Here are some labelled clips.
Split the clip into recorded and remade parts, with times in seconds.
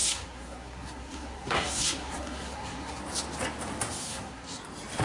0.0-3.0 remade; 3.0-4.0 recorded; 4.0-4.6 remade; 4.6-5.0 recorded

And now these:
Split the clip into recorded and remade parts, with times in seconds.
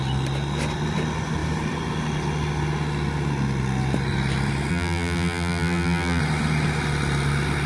0.0-4.7 recorded; 4.7-6.2 remade; 6.2-7.7 recorded